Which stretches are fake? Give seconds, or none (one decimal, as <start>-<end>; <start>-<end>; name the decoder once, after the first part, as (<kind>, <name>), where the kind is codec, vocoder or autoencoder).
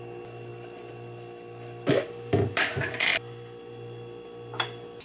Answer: none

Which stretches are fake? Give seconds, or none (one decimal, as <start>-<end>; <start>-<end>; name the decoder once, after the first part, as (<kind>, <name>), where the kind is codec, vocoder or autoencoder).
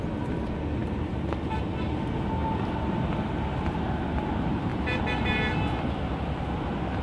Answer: 0.8-1.6 (vocoder, BigVGAN v2); 2.4-3.8; 4.7-5.5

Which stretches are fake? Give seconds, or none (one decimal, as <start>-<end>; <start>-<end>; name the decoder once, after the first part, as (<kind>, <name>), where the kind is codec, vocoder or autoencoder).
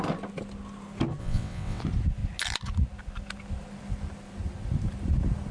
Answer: 1.2-1.8 (vocoder, WaveNeXt)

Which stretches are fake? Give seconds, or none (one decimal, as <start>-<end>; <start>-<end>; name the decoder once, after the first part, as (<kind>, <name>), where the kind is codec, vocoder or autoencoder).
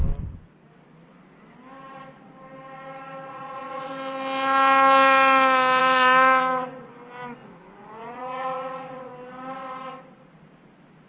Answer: 3.3-3.9 (vocoder, Vocos); 5.8-6.9; 7.4-9.1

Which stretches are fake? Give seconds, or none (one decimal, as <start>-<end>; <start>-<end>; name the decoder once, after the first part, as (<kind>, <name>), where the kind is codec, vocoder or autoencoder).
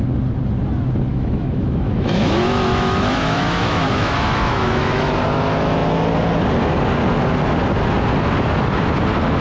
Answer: 1.1-5.1 (autoencoder, DAC-VAE)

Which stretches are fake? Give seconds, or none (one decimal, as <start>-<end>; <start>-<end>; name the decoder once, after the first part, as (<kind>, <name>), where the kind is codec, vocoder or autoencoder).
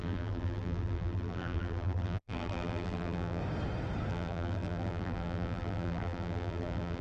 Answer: 0.0-3.4 (vocoder, BigVGAN v2); 4.1-7.0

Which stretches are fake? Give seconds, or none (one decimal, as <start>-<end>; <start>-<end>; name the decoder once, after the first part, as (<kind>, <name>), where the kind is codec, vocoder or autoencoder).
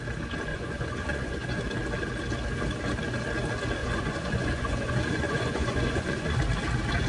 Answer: 0.5-1.6 (vocoder, Vocos); 3.8-6.4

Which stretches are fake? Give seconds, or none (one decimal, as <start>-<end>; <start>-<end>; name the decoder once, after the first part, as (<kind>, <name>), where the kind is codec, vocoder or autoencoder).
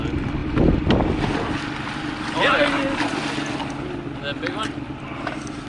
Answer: none